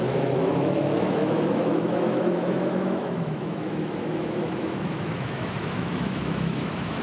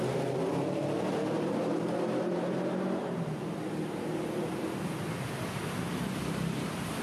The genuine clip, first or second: second